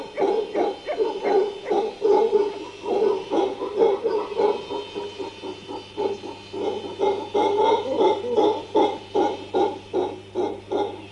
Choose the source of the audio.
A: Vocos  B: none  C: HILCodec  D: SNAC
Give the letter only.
B